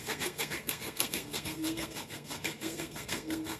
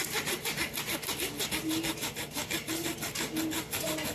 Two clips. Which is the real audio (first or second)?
second